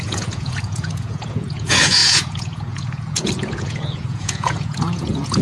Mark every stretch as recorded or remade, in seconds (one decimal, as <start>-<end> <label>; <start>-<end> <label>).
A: 0.0-5.4 remade